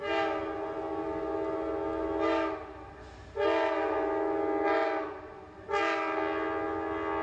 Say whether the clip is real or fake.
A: real